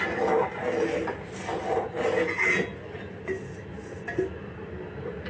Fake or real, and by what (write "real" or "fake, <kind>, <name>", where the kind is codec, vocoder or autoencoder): real